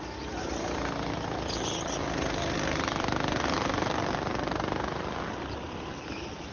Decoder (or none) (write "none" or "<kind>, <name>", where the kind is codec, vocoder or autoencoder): none